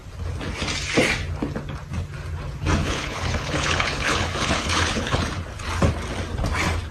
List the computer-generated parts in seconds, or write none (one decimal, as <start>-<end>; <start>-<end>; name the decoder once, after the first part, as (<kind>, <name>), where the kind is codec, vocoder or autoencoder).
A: 2.8-5.2 (codec, HILCodec)